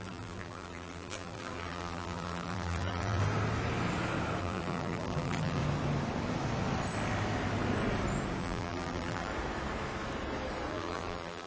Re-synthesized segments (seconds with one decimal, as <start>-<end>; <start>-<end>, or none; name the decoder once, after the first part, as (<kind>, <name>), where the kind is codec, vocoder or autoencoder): 0.0-3.2 (vocoder, BigVGAN v2); 4.4-5.6; 8.4-9.3; 10.7-11.5

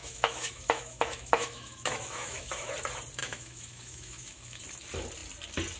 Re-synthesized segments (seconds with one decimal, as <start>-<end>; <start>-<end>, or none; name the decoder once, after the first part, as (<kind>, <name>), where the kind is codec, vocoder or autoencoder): 0.0-2.7 (autoencoder, DAC-VAE); 3.2-4.6

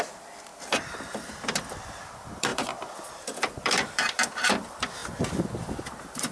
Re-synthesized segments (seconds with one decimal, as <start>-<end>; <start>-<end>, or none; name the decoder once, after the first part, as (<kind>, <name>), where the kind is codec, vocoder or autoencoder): 0.0-5.0 (vocoder, BigVGAN v2); 5.7-6.3